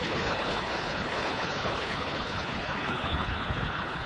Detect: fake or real fake